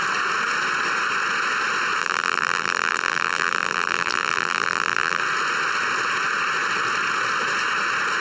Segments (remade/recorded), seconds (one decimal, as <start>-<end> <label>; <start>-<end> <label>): 0.0-2.0 recorded; 2.0-5.2 remade; 5.2-8.2 recorded